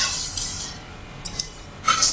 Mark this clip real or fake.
real